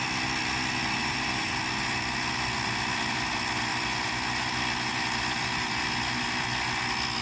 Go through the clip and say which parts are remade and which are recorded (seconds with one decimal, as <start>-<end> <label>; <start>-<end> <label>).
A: 0.0-1.0 recorded; 1.0-1.6 remade; 1.6-7.2 recorded